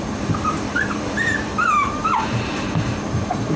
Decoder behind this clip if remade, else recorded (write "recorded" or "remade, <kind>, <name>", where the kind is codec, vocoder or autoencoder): remade, vocoder, BigVGAN v2